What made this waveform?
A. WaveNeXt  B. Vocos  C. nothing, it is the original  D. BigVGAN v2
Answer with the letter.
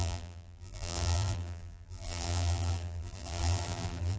D